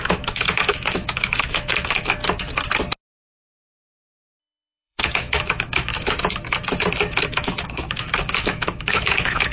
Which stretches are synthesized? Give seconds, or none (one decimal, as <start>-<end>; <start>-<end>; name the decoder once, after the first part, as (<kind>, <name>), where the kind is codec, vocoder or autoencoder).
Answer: 0.0-2.2 (autoencoder, DAC-VAE); 4.4-5.9; 7.3-9.5